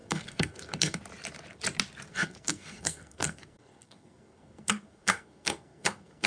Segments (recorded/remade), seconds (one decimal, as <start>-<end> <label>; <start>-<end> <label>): 0.0-1.0 remade; 1.0-2.1 recorded; 2.1-6.3 remade